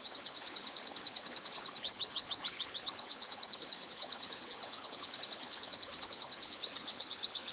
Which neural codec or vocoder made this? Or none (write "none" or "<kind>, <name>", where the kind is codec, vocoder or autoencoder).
codec, HILCodec